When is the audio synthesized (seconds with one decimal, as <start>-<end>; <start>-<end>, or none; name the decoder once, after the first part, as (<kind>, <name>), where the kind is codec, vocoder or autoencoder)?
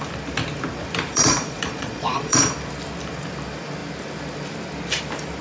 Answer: 1.1-2.5 (vocoder, Vocos)